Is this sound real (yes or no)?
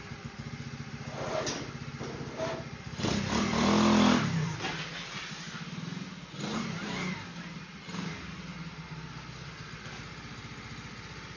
yes